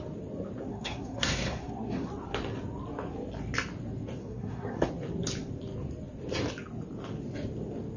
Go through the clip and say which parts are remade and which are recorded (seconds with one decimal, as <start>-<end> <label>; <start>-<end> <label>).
0.0-0.7 recorded; 0.7-2.1 remade; 2.1-4.2 recorded; 4.2-4.9 remade; 4.9-8.0 recorded